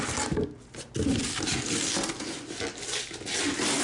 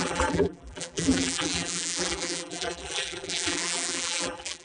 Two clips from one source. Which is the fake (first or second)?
second